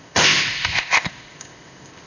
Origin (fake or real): fake